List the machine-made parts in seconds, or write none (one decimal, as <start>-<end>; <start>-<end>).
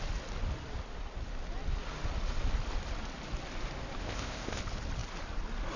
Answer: 4.0-4.6